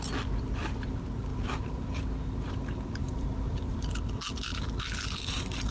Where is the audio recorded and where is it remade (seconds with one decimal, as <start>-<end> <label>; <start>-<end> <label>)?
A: 0.0-1.3 recorded; 1.3-2.0 remade; 2.0-3.0 recorded; 3.0-3.9 remade; 3.9-5.7 recorded